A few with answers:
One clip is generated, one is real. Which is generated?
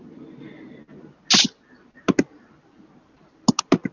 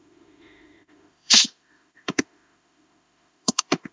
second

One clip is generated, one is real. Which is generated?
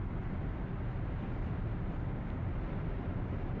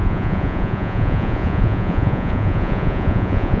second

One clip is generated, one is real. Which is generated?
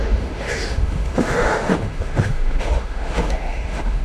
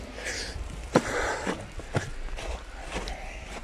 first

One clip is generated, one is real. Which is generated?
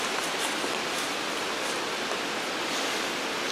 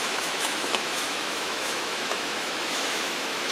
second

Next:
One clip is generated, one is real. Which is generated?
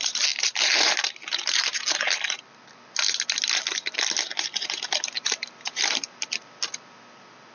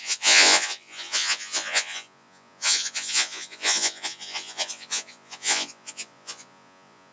second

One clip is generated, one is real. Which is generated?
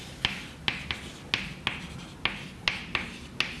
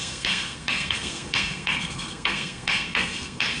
second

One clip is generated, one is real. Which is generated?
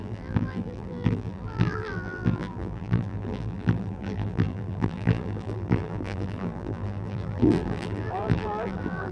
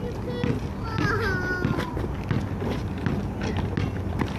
first